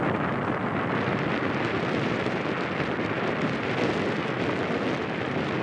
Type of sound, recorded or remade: recorded